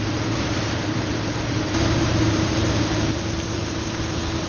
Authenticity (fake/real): fake